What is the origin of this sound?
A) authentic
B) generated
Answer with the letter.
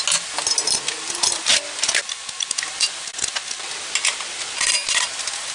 A